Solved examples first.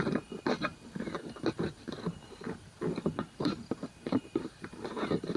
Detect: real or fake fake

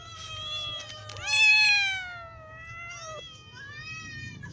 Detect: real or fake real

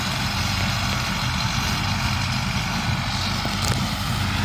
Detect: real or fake real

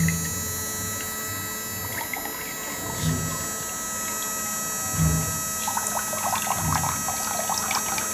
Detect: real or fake real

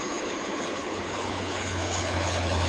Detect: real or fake fake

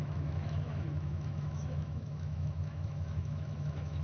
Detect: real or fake fake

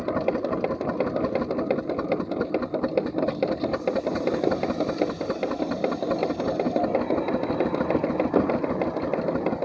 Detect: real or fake real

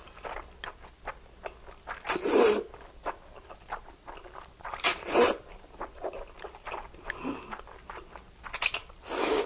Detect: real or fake real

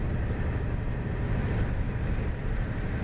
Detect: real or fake fake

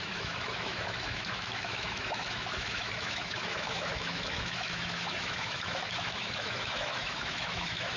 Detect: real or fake fake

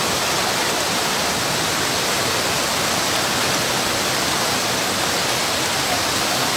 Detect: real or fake real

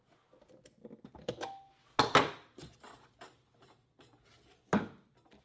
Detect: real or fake real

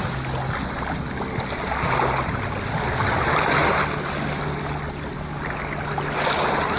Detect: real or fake real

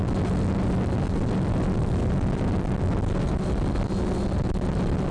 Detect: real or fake real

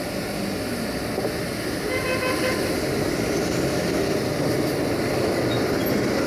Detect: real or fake real